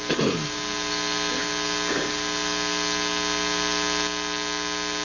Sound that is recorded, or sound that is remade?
recorded